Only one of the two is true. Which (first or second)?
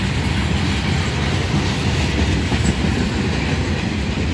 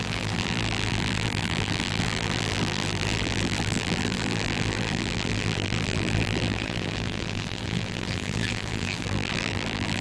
first